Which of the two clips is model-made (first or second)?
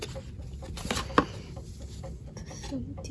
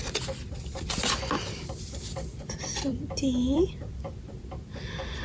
second